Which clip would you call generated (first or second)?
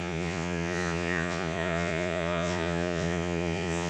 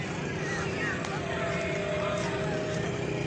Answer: first